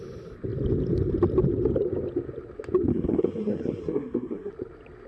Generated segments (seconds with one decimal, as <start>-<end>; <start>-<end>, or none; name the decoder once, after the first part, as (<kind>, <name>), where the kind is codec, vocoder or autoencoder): 2.9-4.5 (codec, SNAC)